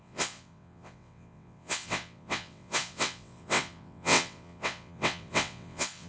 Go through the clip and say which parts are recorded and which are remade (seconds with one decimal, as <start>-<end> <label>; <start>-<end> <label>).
0.0-6.1 remade